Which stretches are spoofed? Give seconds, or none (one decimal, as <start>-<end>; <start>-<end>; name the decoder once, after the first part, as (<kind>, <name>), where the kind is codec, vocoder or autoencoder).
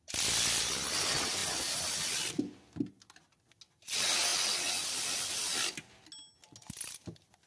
none